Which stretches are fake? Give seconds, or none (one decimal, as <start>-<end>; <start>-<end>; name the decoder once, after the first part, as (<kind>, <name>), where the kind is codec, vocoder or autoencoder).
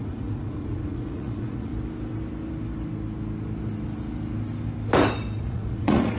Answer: 0.0-1.7 (vocoder, Vocos); 5.4-6.2